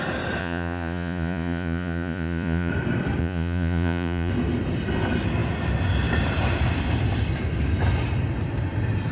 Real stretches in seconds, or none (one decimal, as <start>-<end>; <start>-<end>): 0.0-0.4; 2.7-3.2; 4.3-9.1